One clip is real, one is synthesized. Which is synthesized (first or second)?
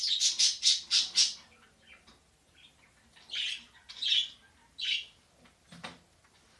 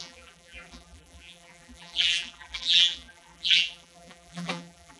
second